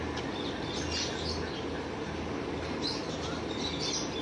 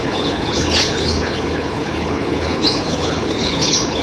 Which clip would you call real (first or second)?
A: first